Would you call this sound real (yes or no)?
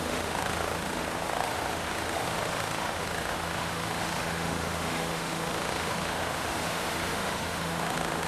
no